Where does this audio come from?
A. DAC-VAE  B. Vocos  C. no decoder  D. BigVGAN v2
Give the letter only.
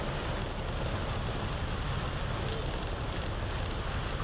C